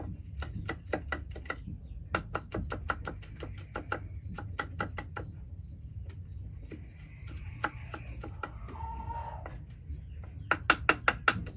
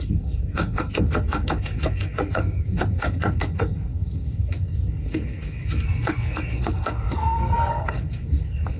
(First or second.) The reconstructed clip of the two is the second